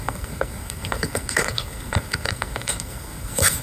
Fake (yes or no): yes